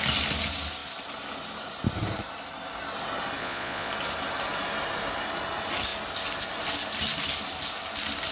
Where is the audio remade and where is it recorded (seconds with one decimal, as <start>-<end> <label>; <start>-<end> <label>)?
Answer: 0.0-3.4 recorded; 3.4-3.9 remade; 3.9-8.3 recorded